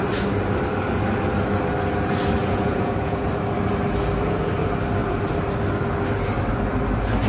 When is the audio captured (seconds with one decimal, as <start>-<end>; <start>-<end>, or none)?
0.0-2.4; 3.3-7.3